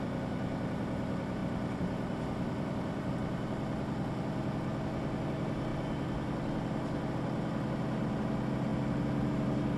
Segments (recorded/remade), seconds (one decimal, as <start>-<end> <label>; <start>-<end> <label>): 0.0-1.4 recorded; 1.4-3.1 remade; 3.1-9.8 recorded